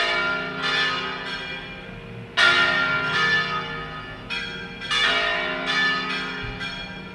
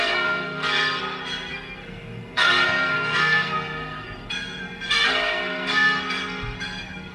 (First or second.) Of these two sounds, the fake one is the second